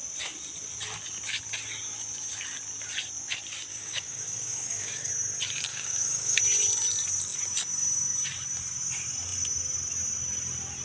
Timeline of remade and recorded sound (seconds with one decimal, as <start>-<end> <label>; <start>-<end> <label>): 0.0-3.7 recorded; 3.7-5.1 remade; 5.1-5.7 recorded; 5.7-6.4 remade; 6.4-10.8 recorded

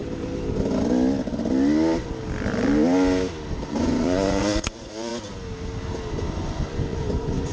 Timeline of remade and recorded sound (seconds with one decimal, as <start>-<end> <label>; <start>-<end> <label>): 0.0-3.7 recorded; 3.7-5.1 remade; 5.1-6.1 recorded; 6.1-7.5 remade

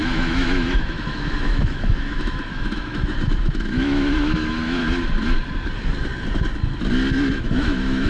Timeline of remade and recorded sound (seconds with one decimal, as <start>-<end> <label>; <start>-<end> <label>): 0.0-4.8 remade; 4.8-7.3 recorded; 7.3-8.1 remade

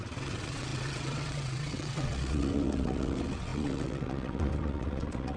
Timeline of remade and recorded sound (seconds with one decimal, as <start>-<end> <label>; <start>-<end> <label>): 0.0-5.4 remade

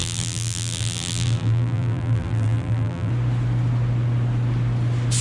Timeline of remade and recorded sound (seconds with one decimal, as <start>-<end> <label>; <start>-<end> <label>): 0.0-3.1 remade; 3.1-5.2 recorded

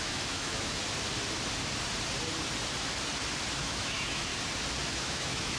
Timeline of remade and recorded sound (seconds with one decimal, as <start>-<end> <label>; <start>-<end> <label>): 0.0-0.8 remade; 0.8-3.6 recorded; 3.6-4.3 remade; 4.3-4.9 recorded; 4.9-5.6 remade

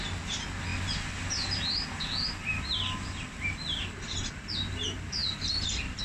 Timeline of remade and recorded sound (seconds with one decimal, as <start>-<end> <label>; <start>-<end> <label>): 0.0-5.2 recorded; 5.2-6.0 remade